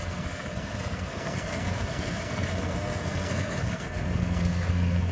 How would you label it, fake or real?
fake